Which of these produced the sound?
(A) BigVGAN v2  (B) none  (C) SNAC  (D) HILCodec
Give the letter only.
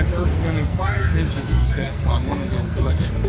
C